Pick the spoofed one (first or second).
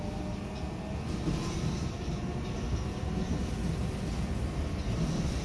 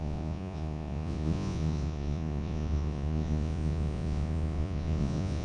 second